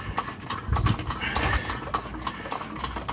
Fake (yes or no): no